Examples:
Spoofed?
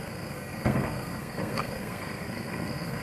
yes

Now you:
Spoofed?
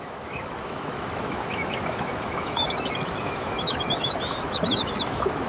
yes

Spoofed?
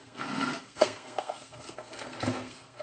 yes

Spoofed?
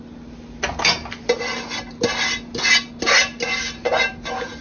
no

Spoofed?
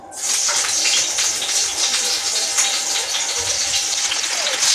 no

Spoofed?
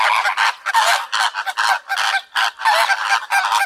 no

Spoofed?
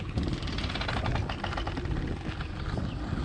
no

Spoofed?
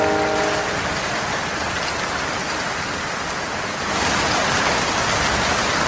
no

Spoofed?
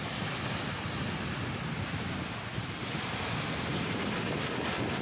no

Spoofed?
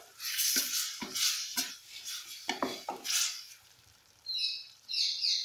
yes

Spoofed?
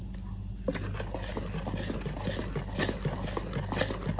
no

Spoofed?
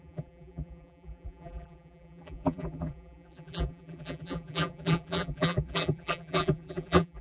yes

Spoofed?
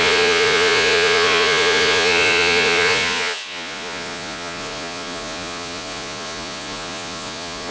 yes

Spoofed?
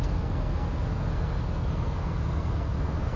yes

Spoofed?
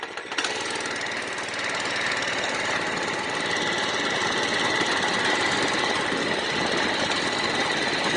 no